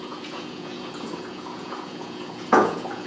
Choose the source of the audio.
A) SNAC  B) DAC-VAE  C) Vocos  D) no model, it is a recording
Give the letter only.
C